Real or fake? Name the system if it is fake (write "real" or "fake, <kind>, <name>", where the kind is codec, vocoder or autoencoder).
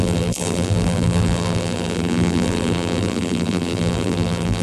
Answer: fake, vocoder, BigVGAN v2